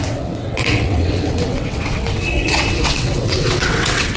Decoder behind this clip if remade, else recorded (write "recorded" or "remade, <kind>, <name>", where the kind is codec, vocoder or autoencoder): remade, vocoder, WaveNeXt